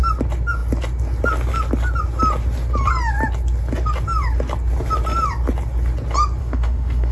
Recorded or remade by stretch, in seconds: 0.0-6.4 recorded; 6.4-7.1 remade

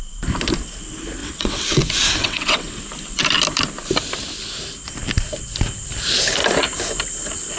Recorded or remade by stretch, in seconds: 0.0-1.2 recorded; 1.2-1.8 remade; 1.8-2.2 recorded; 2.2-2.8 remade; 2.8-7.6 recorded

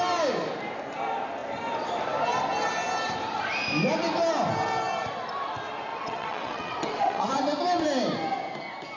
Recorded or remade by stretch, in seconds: 0.0-5.9 recorded; 5.9-7.3 remade; 7.3-9.0 recorded

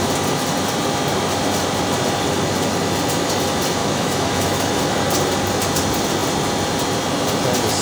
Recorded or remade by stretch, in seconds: 0.0-3.8 recorded; 3.8-4.7 remade; 4.7-7.8 recorded

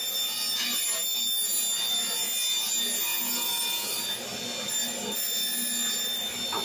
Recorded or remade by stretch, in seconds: 0.0-3.1 recorded; 3.1-3.9 remade; 3.9-6.6 recorded

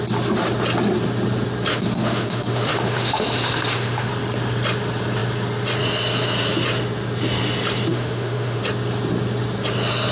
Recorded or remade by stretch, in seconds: 0.0-1.7 recorded; 1.7-4.1 remade; 4.1-7.9 recorded; 7.9-8.6 remade; 8.6-10.1 recorded

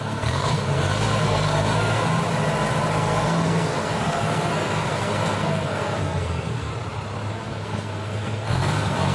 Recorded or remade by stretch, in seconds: 0.0-2.1 remade; 2.1-2.9 recorded; 2.9-6.7 remade; 6.7-7.3 recorded; 7.3-9.1 remade

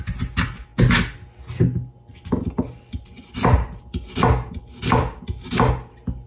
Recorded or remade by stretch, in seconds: 0.0-6.3 recorded